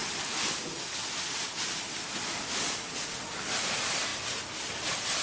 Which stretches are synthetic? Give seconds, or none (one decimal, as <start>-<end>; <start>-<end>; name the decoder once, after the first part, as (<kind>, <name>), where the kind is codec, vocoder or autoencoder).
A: 0.0-3.0 (vocoder, BigVGAN v2)